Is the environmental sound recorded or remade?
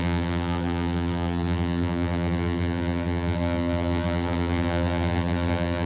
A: remade